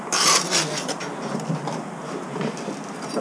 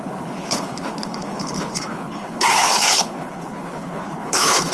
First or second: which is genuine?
first